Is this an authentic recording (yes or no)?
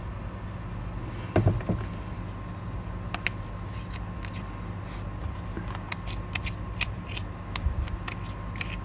yes